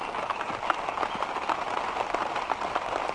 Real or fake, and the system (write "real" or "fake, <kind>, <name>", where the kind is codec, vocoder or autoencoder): real